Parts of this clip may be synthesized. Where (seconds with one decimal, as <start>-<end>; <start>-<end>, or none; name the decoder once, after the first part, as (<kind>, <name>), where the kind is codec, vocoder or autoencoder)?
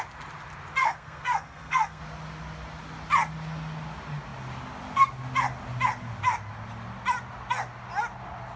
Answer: 0.8-2.0 (codec, SNAC)